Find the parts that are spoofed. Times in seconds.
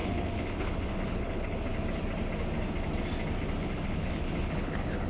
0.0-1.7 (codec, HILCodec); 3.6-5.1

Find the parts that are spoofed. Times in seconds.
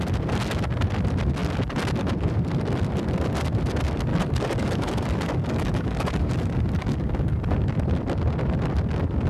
4.1-7.4 (codec, DAC)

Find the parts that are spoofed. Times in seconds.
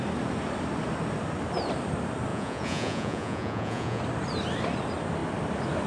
2.3-4.0 (vocoder, Vocos)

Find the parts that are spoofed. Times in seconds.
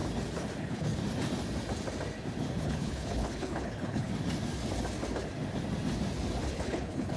0.6-1.0 (codec, HILCodec); 2.6-4.1; 6.5-7.2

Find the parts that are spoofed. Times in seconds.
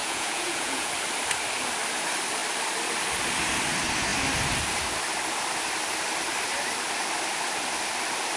0.0-0.9 (vocoder, Vocos)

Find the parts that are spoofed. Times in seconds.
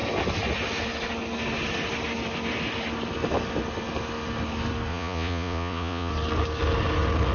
4.9-6.1 (vocoder, Vocos)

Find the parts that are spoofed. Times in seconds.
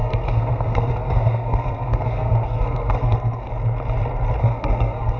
0.0-3.5 (codec, SNAC); 4.4-5.2